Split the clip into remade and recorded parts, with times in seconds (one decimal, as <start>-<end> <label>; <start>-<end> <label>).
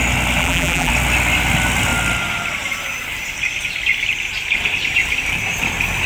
0.0-0.4 recorded; 0.4-0.9 remade; 0.9-6.1 recorded